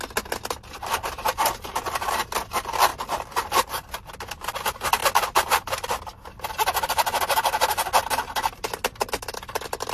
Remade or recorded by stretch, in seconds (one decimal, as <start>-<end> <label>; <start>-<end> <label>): 0.0-2.9 recorded; 2.9-4.5 remade; 4.5-5.0 recorded; 5.0-5.5 remade; 5.5-9.9 recorded